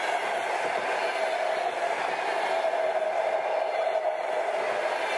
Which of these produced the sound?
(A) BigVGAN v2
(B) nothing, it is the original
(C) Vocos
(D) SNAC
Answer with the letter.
B